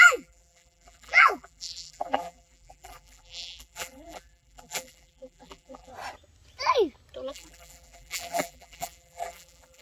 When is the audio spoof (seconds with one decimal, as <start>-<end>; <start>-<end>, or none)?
0.0-5.9; 7.3-9.8